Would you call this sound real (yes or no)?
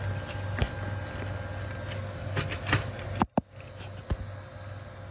yes